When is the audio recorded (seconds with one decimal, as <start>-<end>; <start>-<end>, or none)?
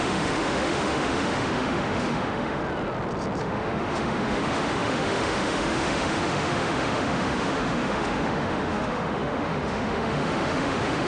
2.6-3.4